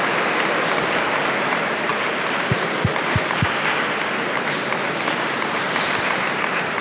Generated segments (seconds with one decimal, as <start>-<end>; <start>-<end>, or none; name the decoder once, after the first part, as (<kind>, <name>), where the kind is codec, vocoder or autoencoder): none